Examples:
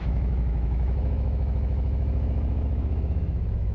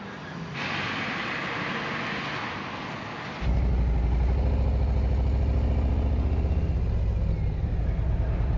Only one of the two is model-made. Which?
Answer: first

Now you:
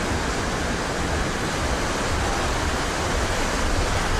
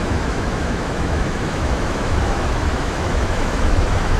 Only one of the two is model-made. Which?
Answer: second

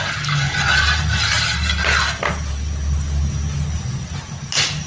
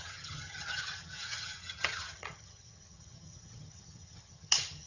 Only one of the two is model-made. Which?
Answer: second